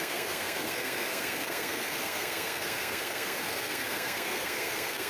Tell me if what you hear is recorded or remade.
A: remade